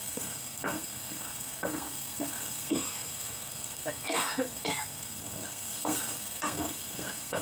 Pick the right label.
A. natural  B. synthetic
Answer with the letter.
B